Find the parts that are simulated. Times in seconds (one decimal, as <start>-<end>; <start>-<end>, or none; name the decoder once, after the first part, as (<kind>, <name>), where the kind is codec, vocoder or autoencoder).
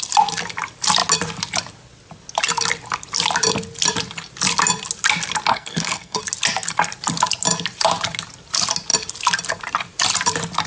5.5-6.2 (codec, SNAC)